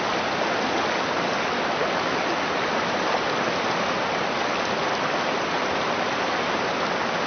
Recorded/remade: recorded